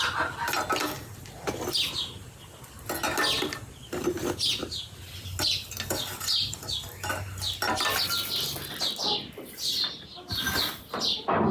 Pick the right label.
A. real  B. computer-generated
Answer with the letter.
A